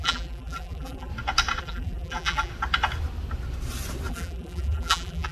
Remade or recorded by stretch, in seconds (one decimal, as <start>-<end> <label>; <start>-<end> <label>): 0.0-1.1 remade; 1.1-1.6 recorded; 1.6-2.5 remade; 2.5-4.1 recorded; 4.1-5.3 remade